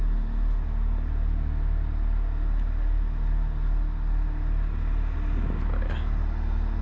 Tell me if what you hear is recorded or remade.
recorded